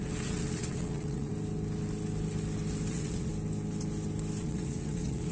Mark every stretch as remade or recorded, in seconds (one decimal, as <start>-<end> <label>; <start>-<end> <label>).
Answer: 0.0-1.3 remade; 1.3-2.9 recorded; 2.9-3.3 remade; 3.3-4.4 recorded; 4.4-5.3 remade